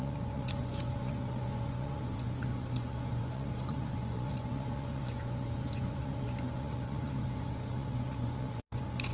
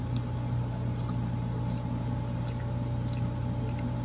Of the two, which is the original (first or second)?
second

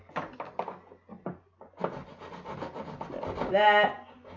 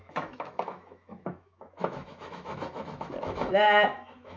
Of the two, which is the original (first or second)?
first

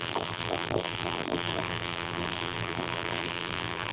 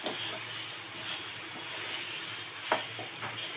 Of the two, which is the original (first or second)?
second